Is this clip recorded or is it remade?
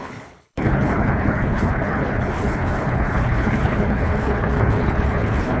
remade